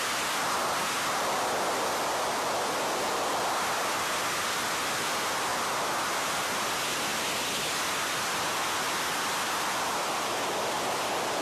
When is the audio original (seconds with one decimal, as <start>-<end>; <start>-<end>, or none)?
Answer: 0.0-11.4